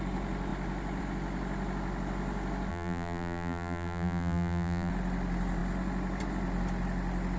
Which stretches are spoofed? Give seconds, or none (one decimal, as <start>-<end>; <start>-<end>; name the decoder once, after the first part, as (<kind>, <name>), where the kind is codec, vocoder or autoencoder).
2.7-4.9 (vocoder, BigVGAN v2)